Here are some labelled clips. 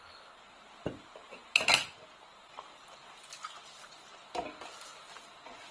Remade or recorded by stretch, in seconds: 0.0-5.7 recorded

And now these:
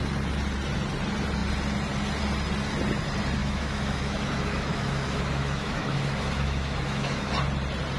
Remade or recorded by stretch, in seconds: 0.0-3.4 recorded; 3.4-7.3 remade; 7.3-8.0 recorded

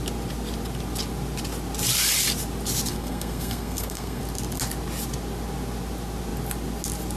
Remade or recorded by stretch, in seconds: 0.0-2.9 recorded; 2.9-4.2 remade; 4.2-7.2 recorded

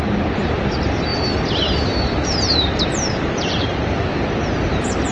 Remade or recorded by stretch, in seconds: 0.0-1.1 recorded; 1.1-4.2 remade; 4.2-5.1 recorded

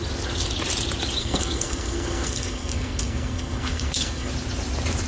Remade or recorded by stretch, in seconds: 0.0-1.2 recorded; 1.2-4.3 remade; 4.3-5.1 recorded

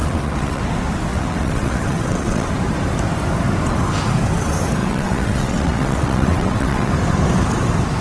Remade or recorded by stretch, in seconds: 0.0-0.6 remade; 0.6-1.1 recorded; 1.1-2.5 remade; 2.5-4.8 recorded; 4.8-6.9 remade; 6.9-8.0 recorded

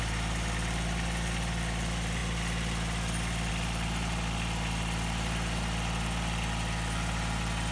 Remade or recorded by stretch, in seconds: 0.0-7.7 recorded

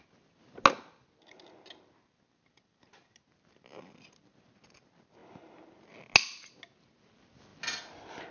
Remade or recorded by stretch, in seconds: 0.0-8.3 recorded